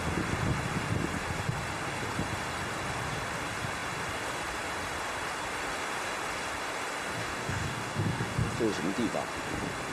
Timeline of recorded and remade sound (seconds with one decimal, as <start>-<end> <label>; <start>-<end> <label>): 0.0-7.2 recorded; 7.2-8.5 remade; 8.5-9.9 recorded